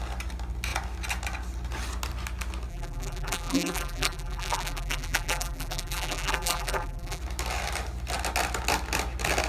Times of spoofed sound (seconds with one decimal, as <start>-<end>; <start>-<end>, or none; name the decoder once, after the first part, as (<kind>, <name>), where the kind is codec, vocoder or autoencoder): 2.7-7.2 (vocoder, BigVGAN v2)